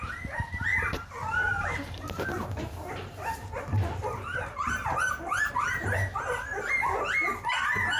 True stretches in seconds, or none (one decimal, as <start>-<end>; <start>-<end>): 0.0-0.7; 5.5-8.0